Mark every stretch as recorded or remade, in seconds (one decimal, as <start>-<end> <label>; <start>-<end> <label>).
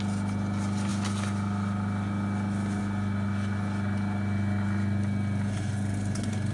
0.0-6.5 recorded